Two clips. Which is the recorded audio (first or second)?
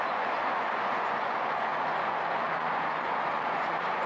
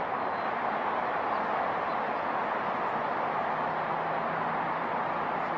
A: second